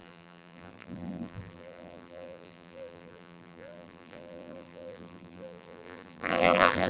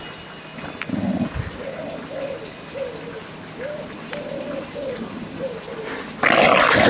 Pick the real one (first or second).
second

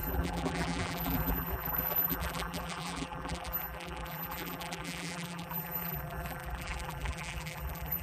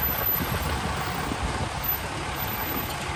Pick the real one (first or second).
second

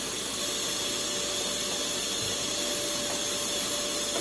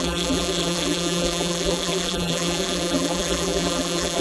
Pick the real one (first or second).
first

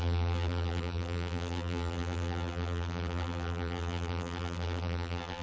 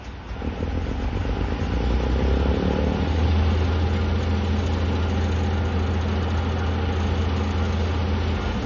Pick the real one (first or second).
second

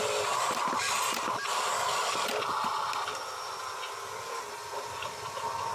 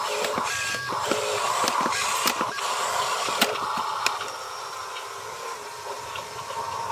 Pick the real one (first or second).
first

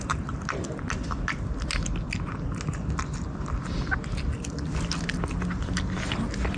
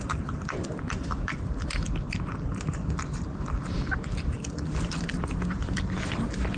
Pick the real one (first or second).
first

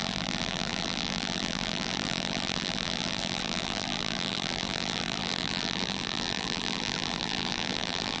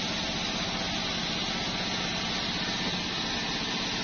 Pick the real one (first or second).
second